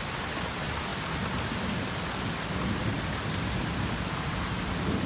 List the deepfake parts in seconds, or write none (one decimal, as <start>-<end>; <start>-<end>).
none